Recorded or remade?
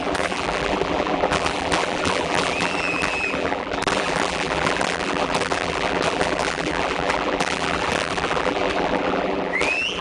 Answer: remade